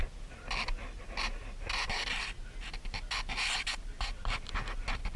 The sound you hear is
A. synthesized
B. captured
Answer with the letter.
B